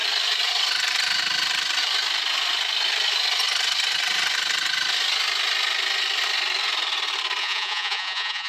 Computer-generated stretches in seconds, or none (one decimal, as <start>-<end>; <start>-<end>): 7.4-8.5